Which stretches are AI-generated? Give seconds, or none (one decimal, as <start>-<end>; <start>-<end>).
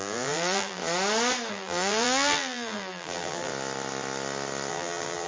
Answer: 0.0-0.8; 1.5-3.5; 4.7-5.3